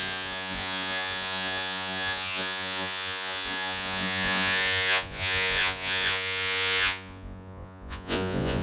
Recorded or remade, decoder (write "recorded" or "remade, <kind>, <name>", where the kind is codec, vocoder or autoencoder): remade, vocoder, Vocos